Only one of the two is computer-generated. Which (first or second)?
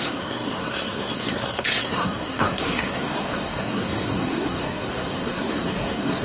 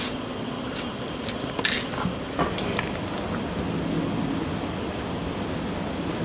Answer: first